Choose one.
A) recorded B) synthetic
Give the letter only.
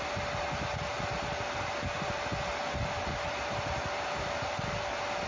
A